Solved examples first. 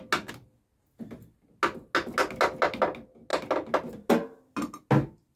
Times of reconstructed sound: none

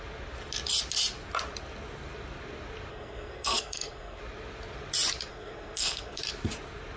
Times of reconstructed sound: 2.9-4.2; 5.3-6.2

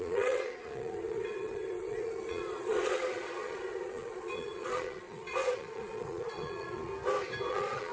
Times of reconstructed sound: 0.0-6.9; 7.5-7.9